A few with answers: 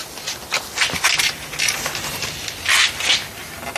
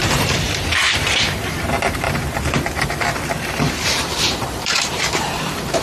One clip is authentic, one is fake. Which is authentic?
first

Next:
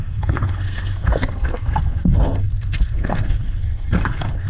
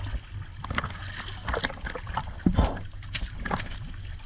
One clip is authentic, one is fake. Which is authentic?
second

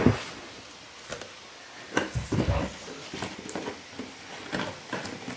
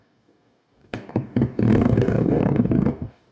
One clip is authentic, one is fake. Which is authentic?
first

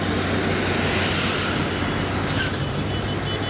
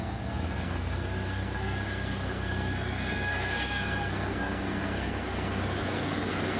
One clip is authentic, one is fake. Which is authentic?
first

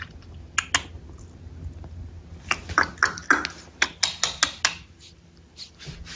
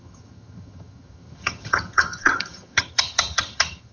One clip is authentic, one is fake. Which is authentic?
first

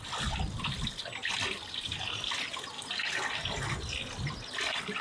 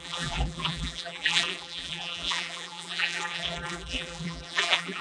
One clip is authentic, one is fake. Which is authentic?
first